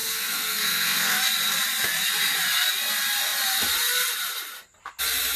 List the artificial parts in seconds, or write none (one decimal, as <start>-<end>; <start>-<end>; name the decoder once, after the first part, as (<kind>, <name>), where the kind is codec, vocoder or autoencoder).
0.0-1.2 (codec, SNAC)